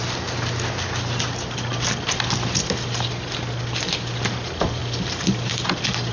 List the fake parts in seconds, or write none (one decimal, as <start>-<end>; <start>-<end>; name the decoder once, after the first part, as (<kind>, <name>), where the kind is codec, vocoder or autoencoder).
none